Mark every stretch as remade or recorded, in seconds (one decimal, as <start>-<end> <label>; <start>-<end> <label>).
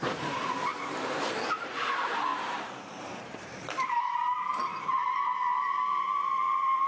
0.0-0.7 remade; 0.7-1.3 recorded; 1.3-5.0 remade; 5.0-6.9 recorded